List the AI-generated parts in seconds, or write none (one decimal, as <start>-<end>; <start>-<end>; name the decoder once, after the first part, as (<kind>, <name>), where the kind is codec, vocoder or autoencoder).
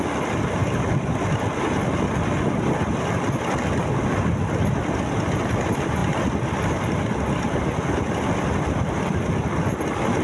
none